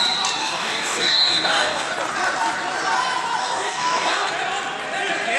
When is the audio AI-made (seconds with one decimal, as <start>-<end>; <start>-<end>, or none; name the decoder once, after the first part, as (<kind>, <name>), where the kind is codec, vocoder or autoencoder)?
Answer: 0.4-1.9 (codec, DAC); 3.4-4.3